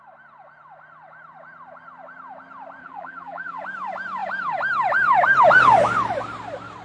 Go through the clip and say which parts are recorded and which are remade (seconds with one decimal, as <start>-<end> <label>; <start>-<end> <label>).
0.0-2.8 recorded; 2.8-3.6 remade; 3.6-6.8 recorded